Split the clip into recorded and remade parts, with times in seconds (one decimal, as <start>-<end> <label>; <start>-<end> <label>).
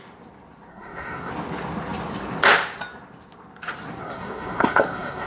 0.0-0.7 recorded; 0.7-1.3 remade; 1.3-4.0 recorded; 4.0-5.3 remade